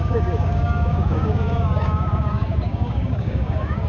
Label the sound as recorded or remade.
remade